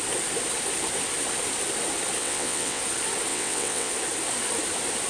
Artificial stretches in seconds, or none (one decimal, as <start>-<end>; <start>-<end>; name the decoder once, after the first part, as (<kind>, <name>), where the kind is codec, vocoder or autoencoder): 2.2-2.8 (vocoder, WaveNeXt); 3.3-3.9